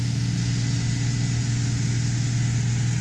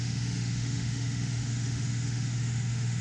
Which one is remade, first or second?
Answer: second